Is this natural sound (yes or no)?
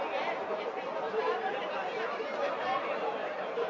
no